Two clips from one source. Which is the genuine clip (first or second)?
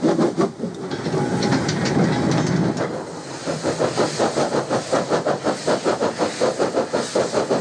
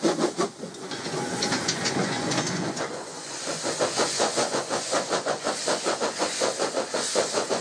first